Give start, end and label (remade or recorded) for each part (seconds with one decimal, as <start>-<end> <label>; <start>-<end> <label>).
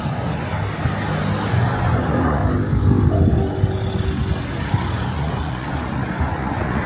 0.0-0.5 remade; 0.5-1.5 recorded; 1.5-2.4 remade; 2.4-4.7 recorded; 4.7-6.9 remade